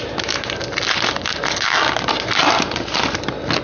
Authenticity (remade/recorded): recorded